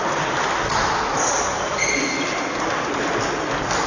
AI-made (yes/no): no